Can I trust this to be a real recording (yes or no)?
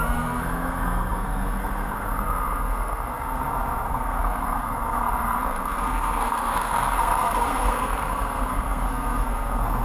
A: no